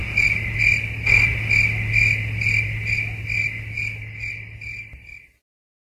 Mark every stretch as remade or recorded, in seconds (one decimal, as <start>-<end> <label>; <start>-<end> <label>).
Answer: 0.0-5.9 recorded